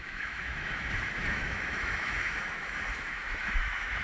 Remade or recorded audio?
remade